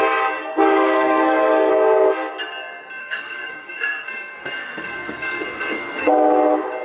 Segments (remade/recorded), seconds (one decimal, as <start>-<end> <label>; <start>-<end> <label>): 0.0-0.4 recorded; 0.4-1.7 remade; 1.7-3.0 recorded; 3.0-6.1 remade; 6.1-6.8 recorded